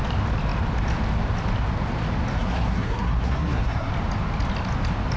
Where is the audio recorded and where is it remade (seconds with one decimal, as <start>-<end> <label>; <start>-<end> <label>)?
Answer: 0.0-2.3 recorded; 2.3-3.9 remade; 3.9-5.2 recorded